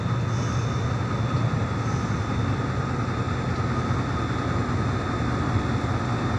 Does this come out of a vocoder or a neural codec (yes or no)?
no